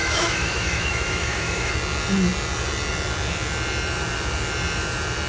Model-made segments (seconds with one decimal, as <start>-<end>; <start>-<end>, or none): 0.0-1.7